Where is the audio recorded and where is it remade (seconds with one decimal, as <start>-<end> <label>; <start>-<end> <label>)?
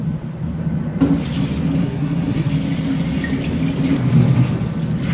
0.0-1.8 recorded; 1.8-2.5 remade; 2.5-5.1 recorded